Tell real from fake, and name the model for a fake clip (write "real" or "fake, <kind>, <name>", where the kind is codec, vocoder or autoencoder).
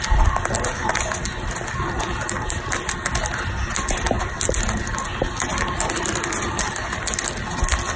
real